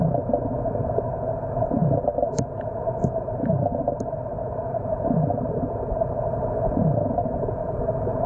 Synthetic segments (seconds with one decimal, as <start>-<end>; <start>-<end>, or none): none